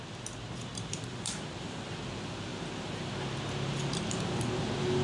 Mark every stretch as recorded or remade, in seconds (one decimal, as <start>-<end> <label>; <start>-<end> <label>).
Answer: 0.0-0.7 recorded; 0.7-1.9 remade; 1.9-2.5 recorded; 2.5-3.1 remade; 3.1-5.0 recorded